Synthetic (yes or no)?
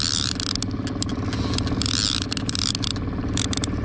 no